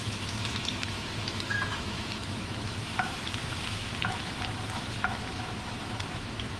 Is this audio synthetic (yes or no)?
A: yes